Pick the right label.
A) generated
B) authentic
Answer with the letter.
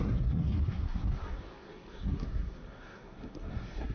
A